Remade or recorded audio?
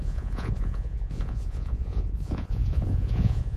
remade